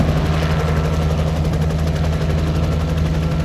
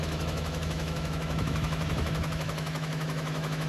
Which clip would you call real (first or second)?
first